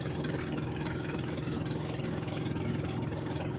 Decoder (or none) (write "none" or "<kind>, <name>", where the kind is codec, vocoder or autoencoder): codec, DAC